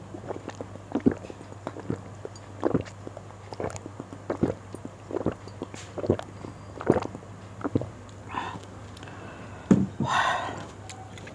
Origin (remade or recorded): recorded